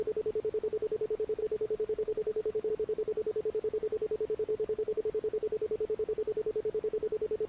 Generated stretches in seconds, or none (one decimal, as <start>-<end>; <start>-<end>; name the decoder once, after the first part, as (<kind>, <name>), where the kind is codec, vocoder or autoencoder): 1.4-2.7 (autoencoder, DAC-VAE); 4.5-5.0